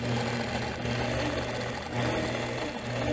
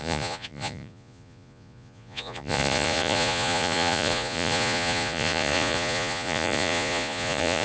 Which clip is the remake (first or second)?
second